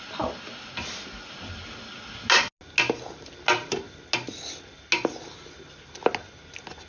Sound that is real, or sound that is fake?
real